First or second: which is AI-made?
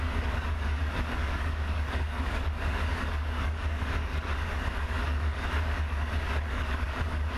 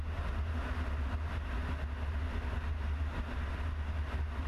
first